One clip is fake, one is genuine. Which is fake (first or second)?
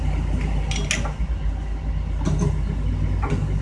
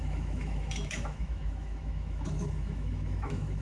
second